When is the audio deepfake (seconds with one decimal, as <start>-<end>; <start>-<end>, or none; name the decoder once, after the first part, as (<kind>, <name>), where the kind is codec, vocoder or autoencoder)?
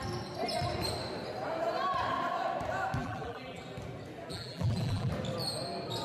3.0-3.6 (vocoder, BigVGAN v2); 4.3-5.1